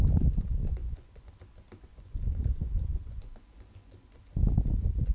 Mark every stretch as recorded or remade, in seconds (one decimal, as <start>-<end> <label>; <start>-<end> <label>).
0.0-0.6 recorded; 0.6-1.3 remade; 1.3-1.9 recorded; 1.9-4.2 remade; 4.2-5.1 recorded